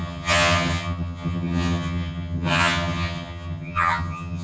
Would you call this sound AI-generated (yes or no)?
yes